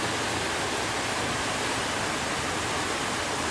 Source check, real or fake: real